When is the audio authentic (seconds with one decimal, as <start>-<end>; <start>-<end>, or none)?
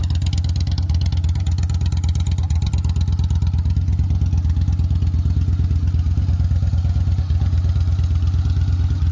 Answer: 0.0-9.1